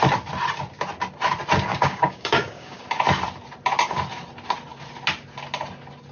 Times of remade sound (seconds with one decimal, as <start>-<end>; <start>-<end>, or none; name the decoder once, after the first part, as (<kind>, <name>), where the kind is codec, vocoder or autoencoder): 1.7-2.8 (codec, DAC)

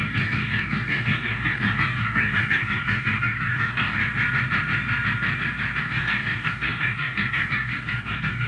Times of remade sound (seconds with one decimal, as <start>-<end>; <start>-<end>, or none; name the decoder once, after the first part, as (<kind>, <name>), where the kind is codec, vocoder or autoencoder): 0.0-4.0 (codec, DAC); 5.8-8.5

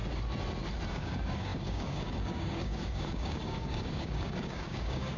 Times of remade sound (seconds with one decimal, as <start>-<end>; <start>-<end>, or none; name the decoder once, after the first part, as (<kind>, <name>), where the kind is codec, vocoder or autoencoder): 0.9-5.2 (codec, DAC)

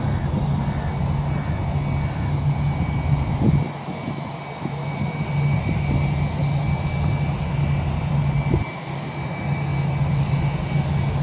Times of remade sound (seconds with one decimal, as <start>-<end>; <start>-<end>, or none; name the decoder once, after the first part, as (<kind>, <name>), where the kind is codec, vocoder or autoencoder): none

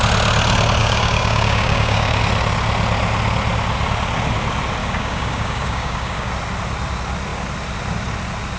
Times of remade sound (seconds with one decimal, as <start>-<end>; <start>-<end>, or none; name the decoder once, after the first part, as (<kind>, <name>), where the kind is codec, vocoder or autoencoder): 0.8-2.2 (codec, DAC); 4.8-6.3

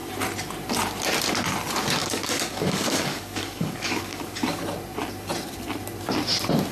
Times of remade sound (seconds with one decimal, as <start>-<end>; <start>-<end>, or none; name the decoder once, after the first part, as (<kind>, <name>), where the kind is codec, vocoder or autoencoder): 2.0-4.6 (codec, DAC)

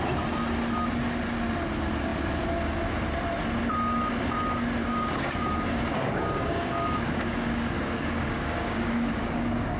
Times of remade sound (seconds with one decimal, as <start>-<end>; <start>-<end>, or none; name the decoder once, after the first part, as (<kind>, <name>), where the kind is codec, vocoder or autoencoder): 4.8-9.8 (codec, DAC)

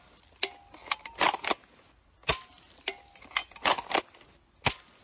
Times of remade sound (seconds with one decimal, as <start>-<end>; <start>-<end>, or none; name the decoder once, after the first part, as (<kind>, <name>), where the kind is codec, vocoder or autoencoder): none